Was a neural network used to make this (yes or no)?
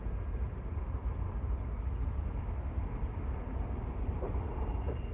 no